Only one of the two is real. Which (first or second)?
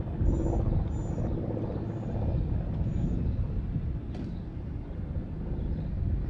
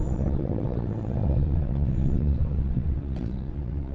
first